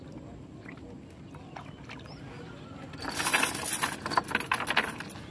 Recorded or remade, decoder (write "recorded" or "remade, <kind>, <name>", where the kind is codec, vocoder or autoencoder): recorded